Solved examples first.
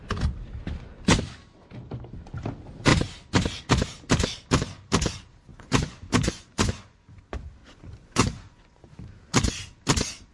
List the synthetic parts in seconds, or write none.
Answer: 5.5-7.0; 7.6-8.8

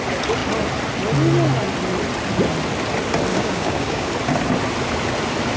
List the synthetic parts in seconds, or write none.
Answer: 3.3-4.1